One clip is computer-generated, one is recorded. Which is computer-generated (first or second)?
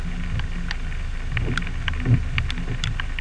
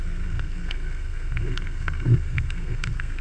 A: second